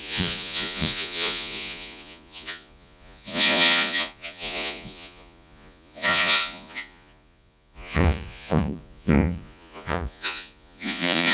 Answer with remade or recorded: remade